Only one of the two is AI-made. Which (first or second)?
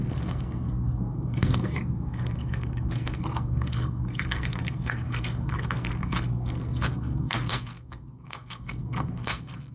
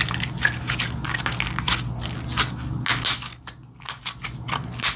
first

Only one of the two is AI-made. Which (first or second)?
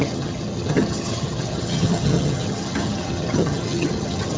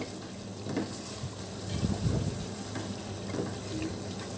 first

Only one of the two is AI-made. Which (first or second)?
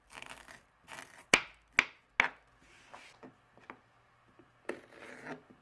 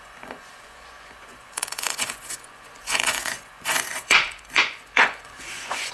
second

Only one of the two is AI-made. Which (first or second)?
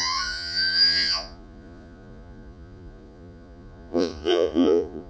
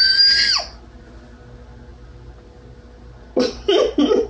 first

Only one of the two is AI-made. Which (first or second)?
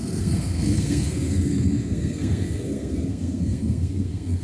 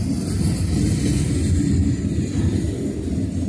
first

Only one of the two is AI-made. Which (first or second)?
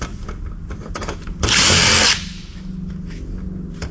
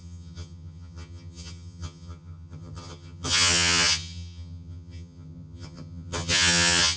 second